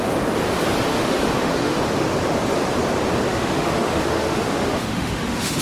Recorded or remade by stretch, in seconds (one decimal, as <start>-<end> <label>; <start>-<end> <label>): 0.0-0.9 recorded; 0.9-1.8 remade; 1.8-3.3 recorded; 3.3-5.6 remade